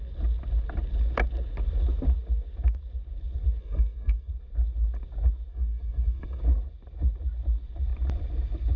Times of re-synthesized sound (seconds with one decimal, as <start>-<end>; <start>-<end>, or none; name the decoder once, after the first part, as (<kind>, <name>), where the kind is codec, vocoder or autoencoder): 3.6-4.3 (codec, SNAC); 5.5-6.4